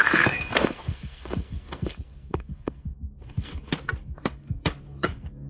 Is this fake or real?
fake